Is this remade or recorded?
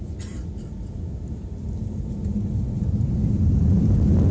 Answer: recorded